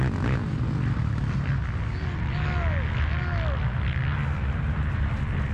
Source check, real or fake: real